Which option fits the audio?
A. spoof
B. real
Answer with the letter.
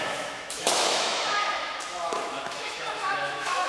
A